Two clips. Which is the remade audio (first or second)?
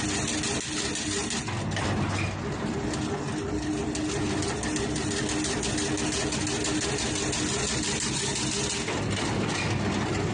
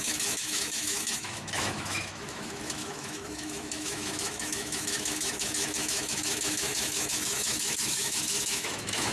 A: second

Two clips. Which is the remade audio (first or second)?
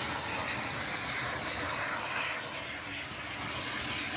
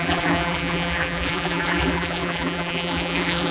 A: second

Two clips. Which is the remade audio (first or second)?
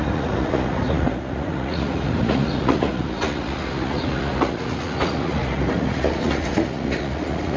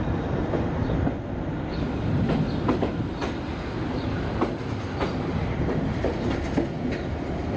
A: first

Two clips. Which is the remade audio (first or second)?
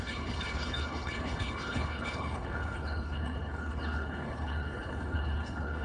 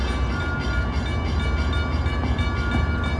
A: first